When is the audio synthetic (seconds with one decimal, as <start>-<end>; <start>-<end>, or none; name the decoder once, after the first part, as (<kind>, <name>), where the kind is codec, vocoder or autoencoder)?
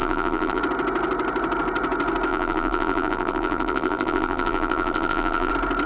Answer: 0.0-0.6 (vocoder, BigVGAN v2); 2.3-5.5